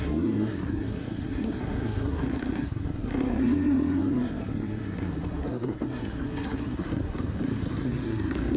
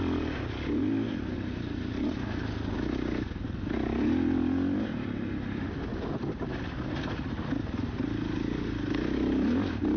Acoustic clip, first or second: second